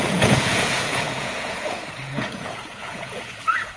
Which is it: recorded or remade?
remade